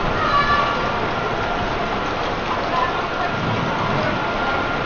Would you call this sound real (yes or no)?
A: yes